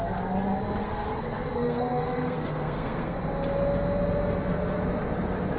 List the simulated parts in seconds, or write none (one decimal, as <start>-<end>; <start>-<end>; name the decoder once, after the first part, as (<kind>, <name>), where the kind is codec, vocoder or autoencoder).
0.8-3.2 (codec, SNAC)